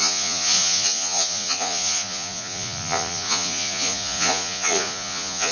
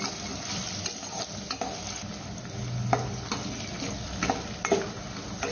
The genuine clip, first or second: second